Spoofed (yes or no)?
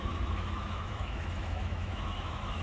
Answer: yes